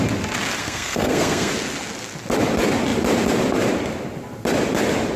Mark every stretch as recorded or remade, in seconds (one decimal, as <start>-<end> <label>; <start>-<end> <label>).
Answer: 0.0-0.6 recorded; 0.6-1.5 remade; 1.5-5.2 recorded